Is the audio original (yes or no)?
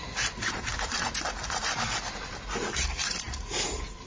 yes